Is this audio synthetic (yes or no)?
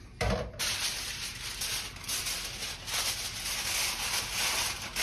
no